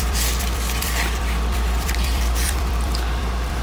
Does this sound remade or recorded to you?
remade